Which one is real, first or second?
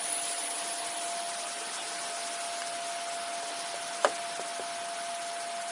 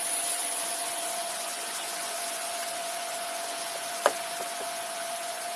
first